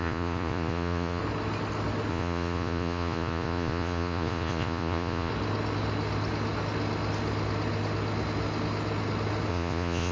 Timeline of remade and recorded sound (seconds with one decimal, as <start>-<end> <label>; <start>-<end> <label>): 0.0-1.2 remade; 1.2-2.1 recorded; 2.1-5.3 remade; 5.3-9.5 recorded; 9.5-10.1 remade